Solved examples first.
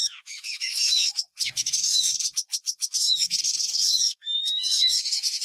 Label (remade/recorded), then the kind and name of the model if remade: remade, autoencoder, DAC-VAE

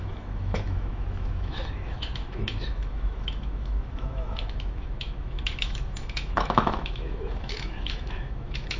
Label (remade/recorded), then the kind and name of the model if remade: remade, autoencoder, DAC-VAE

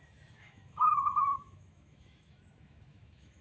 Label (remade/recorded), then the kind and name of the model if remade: remade, autoencoder, DAC-VAE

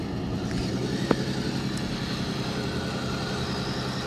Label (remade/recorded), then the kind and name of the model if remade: recorded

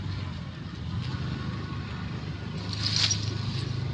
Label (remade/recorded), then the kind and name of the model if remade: recorded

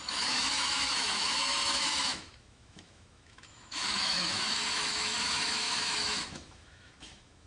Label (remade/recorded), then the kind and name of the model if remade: remade, autoencoder, DAC-VAE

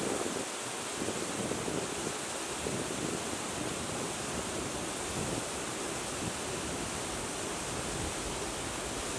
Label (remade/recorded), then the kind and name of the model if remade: recorded